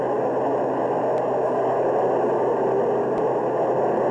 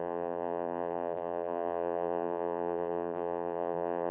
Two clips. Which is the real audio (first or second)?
first